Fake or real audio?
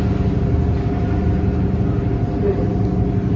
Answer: real